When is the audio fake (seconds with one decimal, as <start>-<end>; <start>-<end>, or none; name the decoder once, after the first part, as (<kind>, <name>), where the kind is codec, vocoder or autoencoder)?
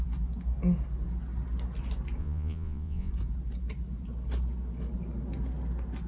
2.2-3.1 (vocoder, Vocos)